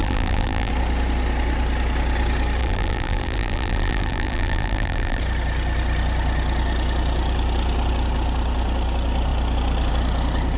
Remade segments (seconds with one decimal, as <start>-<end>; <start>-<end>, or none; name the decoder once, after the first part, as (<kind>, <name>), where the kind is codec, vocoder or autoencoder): 0.0-0.7 (vocoder, BigVGAN v2); 2.6-5.2